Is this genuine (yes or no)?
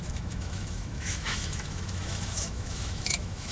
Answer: no